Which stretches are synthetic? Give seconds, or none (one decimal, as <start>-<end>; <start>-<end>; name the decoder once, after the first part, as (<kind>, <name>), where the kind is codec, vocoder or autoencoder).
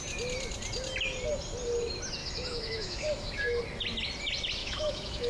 2.2-3.6 (autoencoder, DAC-VAE); 4.6-5.3